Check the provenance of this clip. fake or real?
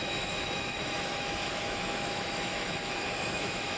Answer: fake